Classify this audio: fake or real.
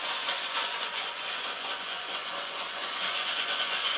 fake